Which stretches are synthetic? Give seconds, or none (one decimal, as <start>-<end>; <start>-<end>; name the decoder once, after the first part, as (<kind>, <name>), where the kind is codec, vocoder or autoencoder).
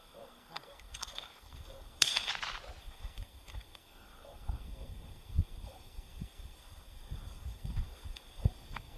0.0-2.3 (codec, SNAC); 2.8-9.0